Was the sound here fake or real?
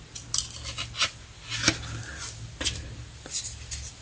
real